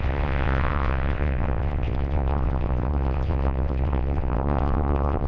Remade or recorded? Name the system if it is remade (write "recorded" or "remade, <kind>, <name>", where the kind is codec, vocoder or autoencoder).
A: remade, vocoder, WaveNeXt